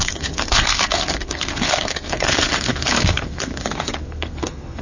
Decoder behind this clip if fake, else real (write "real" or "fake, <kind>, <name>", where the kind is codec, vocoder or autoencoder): fake, codec, SNAC